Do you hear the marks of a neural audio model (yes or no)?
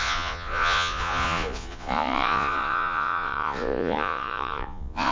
yes